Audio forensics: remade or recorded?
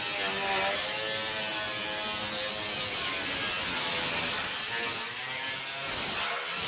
recorded